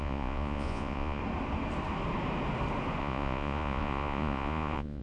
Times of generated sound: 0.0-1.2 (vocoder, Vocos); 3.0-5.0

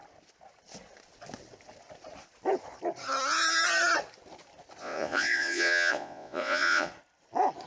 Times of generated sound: 4.8-6.9 (vocoder, Vocos)